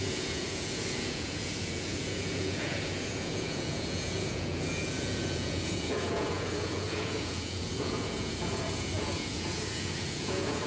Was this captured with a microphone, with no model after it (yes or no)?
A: no